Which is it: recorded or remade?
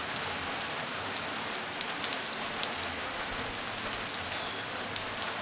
recorded